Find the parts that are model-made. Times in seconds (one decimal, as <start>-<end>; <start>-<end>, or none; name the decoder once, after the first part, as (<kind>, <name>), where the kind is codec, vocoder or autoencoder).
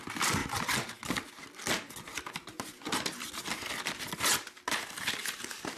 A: none